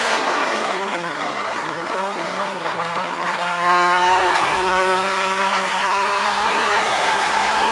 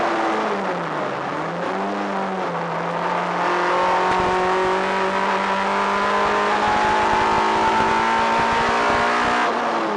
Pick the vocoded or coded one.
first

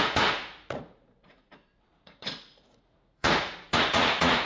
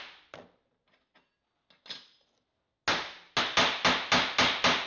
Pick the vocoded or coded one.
first